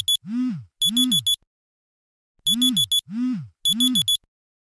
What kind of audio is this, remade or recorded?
recorded